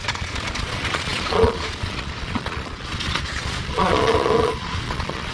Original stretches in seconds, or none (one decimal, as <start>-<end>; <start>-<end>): none

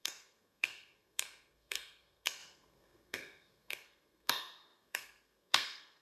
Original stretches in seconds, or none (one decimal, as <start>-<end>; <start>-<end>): none

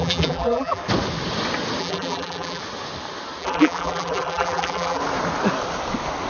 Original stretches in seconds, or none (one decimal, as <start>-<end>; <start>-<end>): 0.8-1.8; 2.6-3.4; 5.0-6.3

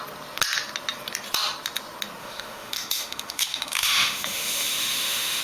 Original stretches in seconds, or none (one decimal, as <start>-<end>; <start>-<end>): 0.0-2.2

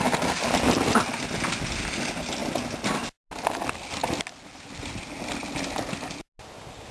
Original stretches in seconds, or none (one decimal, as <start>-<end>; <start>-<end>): 0.0-6.9

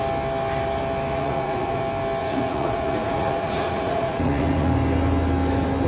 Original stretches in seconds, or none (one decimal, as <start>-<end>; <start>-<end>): 0.0-1.1; 1.8-2.2; 4.7-5.9

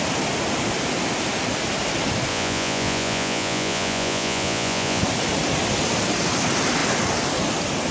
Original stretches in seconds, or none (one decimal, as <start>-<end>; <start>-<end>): 0.0-2.3; 5.0-7.9

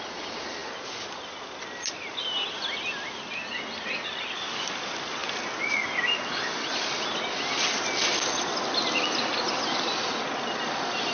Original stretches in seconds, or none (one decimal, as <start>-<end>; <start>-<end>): 0.0-11.1